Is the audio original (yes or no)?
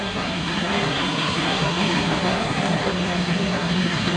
no